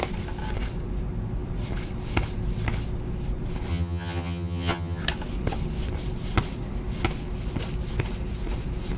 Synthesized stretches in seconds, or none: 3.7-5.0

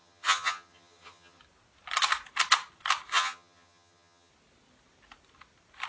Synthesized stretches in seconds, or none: 0.0-1.4; 3.1-4.3

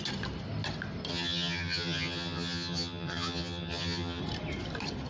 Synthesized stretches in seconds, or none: 1.1-4.2

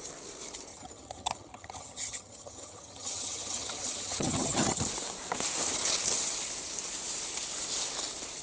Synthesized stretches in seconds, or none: 0.7-4.8

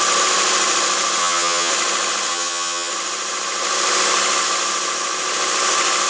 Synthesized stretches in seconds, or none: 1.2-1.7; 2.3-2.9

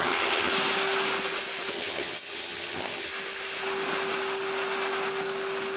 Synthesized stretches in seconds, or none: 0.0-0.5; 1.7-3.1

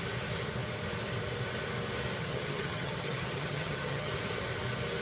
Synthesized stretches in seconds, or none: 2.2-4.1